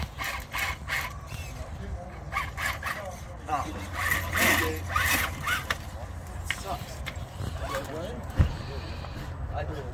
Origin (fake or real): real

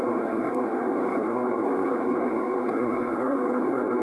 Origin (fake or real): fake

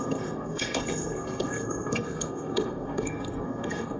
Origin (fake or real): fake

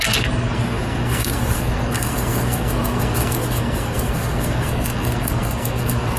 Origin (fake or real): fake